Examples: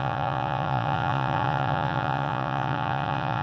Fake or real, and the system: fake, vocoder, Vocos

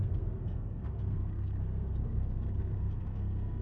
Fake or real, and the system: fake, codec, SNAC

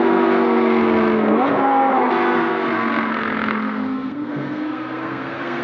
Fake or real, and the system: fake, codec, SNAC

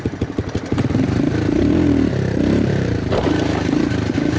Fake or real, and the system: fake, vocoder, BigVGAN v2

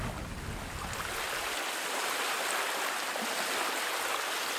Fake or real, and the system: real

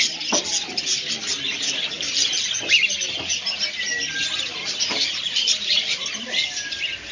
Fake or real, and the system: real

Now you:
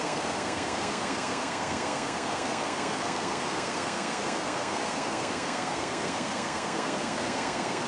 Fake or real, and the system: fake, codec, SNAC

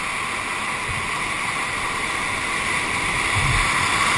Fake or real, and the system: real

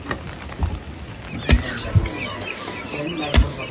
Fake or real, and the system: real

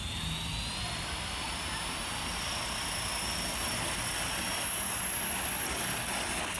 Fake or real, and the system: real